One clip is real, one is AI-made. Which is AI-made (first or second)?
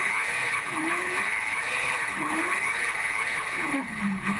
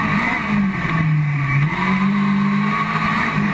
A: first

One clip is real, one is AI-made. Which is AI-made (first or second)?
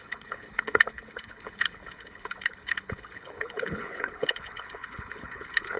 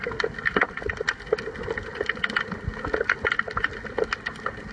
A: first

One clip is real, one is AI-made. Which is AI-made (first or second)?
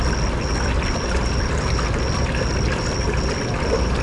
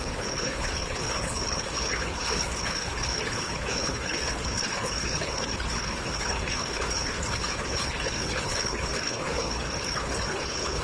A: second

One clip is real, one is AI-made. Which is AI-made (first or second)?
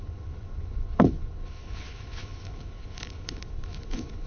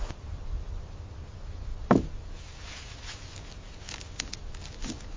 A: first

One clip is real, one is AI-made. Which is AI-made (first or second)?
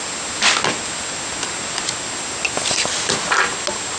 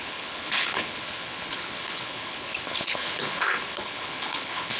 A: second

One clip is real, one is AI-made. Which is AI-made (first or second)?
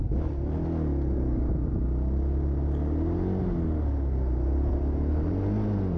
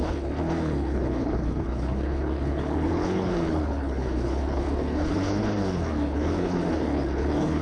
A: second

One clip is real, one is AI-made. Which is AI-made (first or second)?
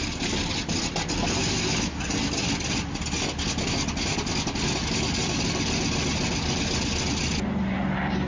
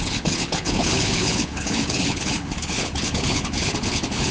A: second